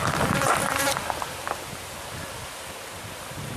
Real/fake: real